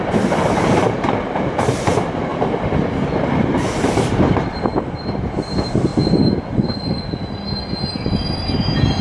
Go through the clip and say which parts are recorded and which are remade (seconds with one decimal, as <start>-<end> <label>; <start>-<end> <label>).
0.0-2.3 remade; 2.3-3.3 recorded; 3.3-5.9 remade; 5.9-8.6 recorded; 8.6-9.0 remade